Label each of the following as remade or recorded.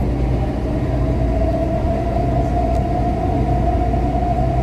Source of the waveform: recorded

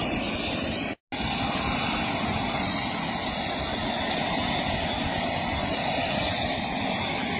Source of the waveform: recorded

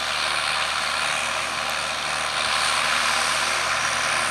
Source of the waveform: recorded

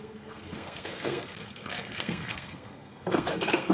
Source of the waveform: remade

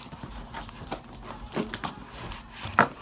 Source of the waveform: recorded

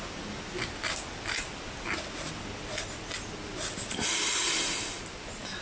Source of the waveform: recorded